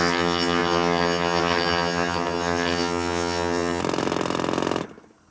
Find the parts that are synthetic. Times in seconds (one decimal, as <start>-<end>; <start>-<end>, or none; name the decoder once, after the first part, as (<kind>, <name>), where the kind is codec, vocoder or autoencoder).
0.0-3.8 (vocoder, HiFi-GAN)